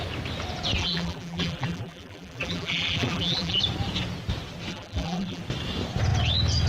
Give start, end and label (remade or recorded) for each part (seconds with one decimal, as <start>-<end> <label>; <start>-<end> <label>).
0.0-0.8 recorded; 0.8-3.6 remade; 3.6-4.7 recorded; 4.7-5.4 remade; 5.4-6.7 recorded